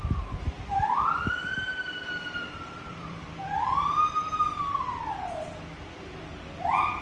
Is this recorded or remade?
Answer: remade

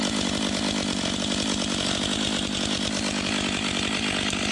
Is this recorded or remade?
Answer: recorded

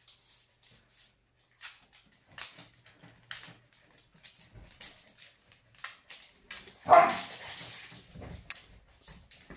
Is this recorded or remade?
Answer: recorded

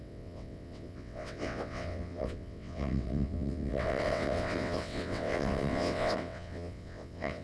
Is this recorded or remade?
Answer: remade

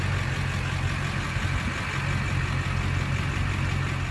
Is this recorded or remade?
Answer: recorded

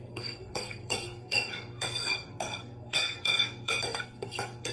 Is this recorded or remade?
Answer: remade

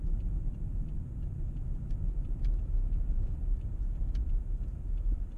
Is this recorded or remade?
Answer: remade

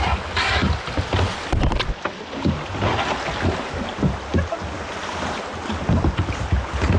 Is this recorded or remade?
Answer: recorded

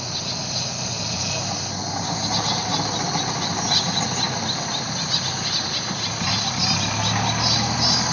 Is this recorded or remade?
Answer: recorded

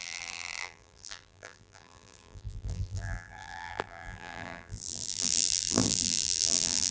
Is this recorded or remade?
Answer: remade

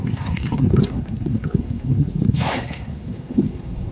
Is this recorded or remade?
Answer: remade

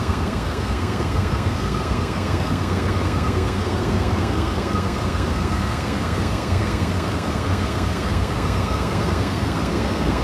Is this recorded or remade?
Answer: remade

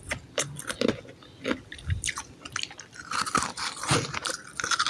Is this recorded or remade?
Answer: remade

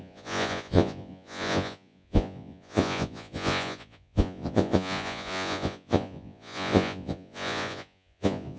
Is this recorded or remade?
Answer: remade